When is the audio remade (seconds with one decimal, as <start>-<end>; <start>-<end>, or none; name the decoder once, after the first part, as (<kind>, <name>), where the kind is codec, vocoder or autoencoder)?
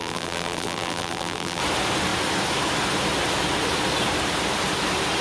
0.0-1.6 (vocoder, BigVGAN v2)